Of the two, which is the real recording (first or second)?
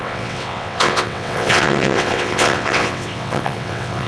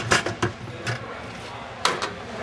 second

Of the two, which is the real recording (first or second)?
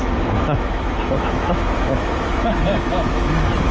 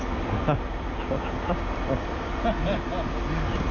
second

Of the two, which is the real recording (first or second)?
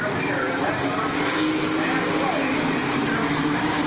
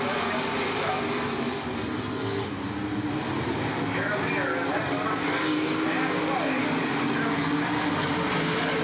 second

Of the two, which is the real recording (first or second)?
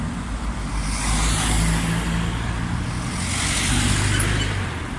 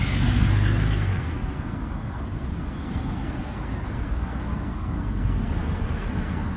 first